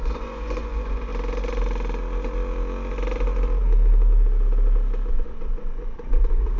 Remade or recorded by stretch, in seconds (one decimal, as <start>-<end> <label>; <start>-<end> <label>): 0.0-1.1 remade; 1.1-5.1 recorded; 5.1-6.6 remade